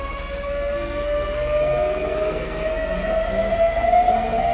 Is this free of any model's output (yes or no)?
no